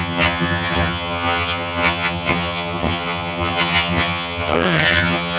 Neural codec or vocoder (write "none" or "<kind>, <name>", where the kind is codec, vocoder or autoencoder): vocoder, HiFi-GAN